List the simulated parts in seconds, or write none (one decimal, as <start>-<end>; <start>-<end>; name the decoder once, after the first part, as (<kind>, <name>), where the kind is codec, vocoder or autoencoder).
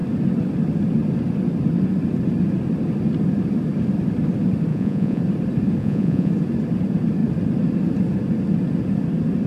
4.7-5.2 (vocoder, Vocos); 5.8-6.3